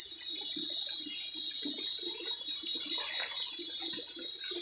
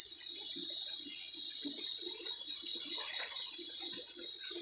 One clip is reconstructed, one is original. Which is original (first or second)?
first